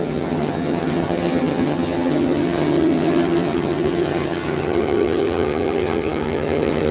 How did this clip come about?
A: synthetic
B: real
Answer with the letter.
A